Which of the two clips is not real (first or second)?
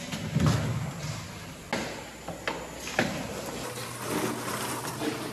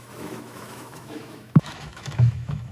second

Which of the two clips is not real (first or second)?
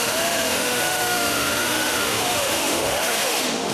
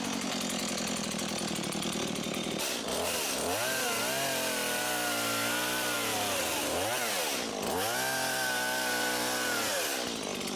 first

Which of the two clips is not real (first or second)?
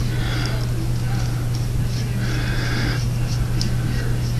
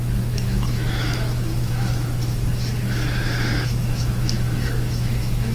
second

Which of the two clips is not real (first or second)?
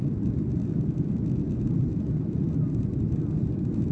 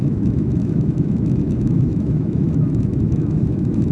second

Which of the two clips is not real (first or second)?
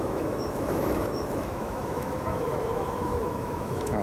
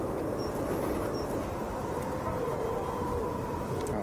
first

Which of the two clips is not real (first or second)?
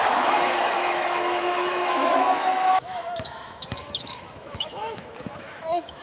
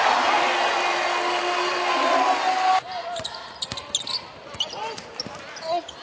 first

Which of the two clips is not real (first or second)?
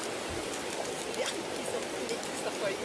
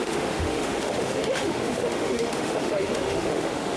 second